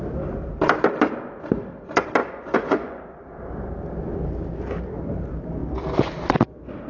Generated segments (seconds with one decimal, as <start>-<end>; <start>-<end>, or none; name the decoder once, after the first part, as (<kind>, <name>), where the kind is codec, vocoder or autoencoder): 2.2-3.0 (vocoder, Vocos)